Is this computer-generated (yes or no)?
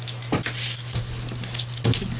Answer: no